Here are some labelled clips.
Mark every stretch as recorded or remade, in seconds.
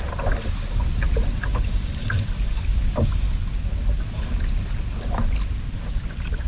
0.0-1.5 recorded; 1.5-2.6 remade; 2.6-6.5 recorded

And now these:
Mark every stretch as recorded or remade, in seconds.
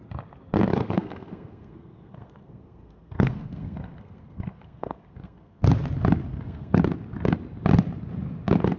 0.0-0.7 recorded; 0.7-5.6 remade; 5.6-6.3 recorded; 6.3-6.8 remade; 6.8-8.8 recorded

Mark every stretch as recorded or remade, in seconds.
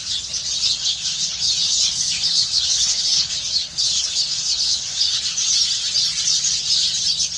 0.0-0.8 recorded; 0.8-5.2 remade; 5.2-7.4 recorded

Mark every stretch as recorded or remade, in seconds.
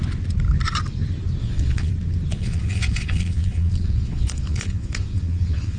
0.0-1.4 recorded; 1.4-1.9 remade; 1.9-2.3 recorded; 2.3-5.8 remade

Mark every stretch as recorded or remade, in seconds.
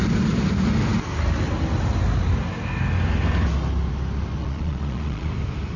0.0-4.4 recorded; 4.4-5.3 remade; 5.3-5.8 recorded